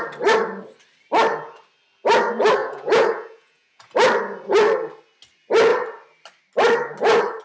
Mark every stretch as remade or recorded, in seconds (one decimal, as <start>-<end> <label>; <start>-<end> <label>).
0.0-2.6 recorded; 2.6-3.9 remade; 3.9-7.4 recorded